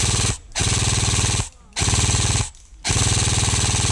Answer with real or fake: real